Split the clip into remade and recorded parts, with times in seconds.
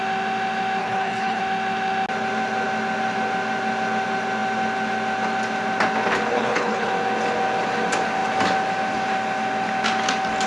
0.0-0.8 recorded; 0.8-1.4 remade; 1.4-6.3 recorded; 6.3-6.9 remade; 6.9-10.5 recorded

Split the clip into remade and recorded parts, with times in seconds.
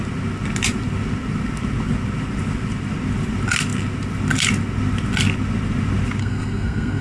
0.0-6.2 recorded; 6.2-7.0 remade